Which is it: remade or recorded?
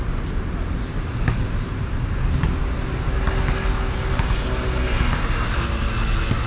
recorded